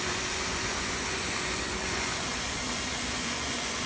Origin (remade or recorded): remade